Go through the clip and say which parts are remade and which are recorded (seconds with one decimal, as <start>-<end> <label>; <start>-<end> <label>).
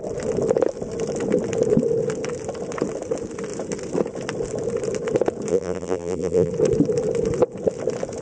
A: 0.0-5.5 recorded; 5.5-6.5 remade; 6.5-8.2 recorded